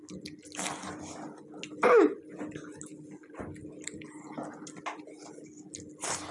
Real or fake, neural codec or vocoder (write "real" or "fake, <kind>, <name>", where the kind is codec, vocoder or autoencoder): real